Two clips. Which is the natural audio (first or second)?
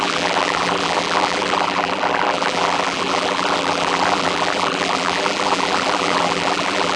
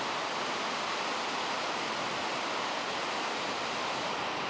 second